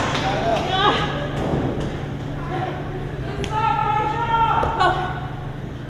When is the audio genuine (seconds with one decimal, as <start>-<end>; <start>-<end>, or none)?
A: 0.0-0.5; 1.1-2.6; 3.2-5.9